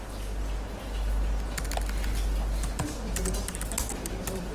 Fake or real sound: real